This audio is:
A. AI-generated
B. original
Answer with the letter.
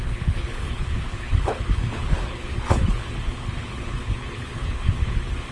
A